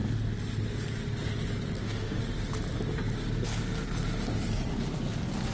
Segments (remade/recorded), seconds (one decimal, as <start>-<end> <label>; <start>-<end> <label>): 0.0-1.8 recorded; 1.8-2.2 remade; 2.2-5.5 recorded